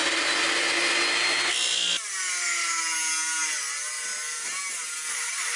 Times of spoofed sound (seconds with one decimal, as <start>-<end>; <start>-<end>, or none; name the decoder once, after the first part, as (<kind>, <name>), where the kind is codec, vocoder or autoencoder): none